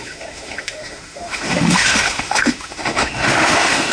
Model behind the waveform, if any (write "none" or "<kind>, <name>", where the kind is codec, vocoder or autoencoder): autoencoder, DAC-VAE